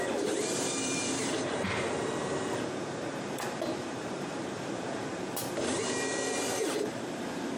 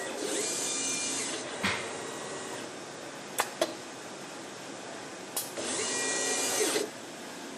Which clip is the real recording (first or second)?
second